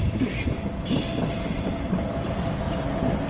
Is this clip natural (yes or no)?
yes